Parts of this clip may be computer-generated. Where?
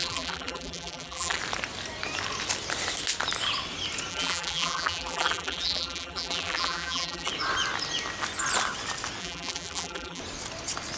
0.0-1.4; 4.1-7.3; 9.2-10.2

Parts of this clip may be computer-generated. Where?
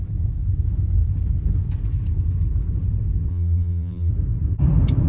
3.3-4.1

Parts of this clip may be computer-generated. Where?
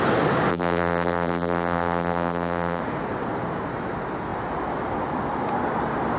0.5-2.8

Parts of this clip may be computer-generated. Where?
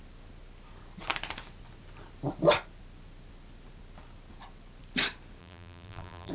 5.4-6.3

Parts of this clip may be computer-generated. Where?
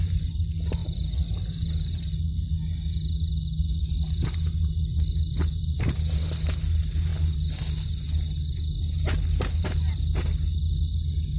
0.8-2.2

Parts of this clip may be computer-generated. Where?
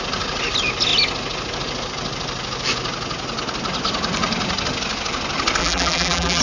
5.6-6.4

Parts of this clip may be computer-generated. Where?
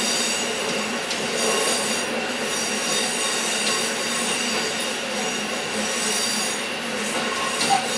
none